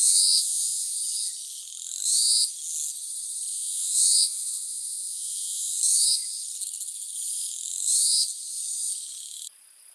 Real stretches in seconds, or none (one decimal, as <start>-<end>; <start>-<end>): 1.0-3.5; 5.8-9.9